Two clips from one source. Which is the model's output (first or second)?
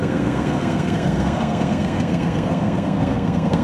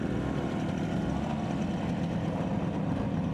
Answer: first